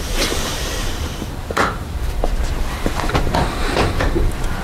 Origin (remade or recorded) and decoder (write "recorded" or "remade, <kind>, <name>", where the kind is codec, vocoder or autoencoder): remade, vocoder, BigVGAN v2